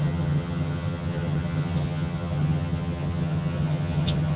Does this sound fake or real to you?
fake